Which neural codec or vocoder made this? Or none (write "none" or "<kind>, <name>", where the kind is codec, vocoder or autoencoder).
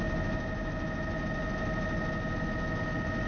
none